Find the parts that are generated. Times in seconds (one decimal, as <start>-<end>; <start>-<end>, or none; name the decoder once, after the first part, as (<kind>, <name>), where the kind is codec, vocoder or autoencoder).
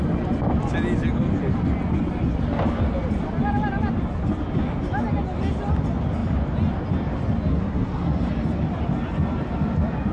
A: 7.5-8.3 (codec, SNAC)